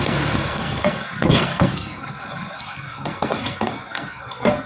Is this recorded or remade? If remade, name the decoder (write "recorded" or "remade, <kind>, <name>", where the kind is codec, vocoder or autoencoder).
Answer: remade, codec, SNAC